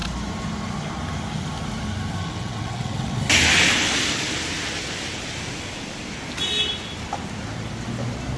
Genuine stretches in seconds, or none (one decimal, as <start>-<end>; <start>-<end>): 0.0-2.2; 3.2-8.4